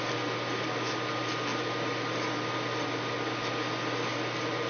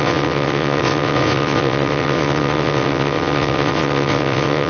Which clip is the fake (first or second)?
second